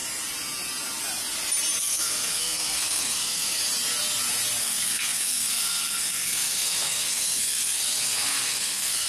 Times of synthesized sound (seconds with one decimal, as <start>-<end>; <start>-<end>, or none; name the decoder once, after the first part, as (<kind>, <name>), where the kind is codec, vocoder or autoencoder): 1.8-3.6 (codec, SNAC); 4.6-9.1